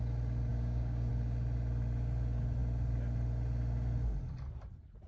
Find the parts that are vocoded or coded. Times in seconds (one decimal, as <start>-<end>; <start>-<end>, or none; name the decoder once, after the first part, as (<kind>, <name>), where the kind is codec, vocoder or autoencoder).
0.5-1.1 (codec, DAC)